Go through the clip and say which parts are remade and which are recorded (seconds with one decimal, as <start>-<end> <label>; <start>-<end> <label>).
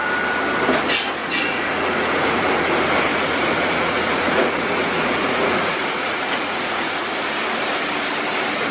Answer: 0.0-1.2 recorded; 1.2-2.5 remade; 2.5-3.1 recorded; 3.1-7.1 remade; 7.1-8.7 recorded